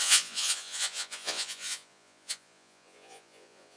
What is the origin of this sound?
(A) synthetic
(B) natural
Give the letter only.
A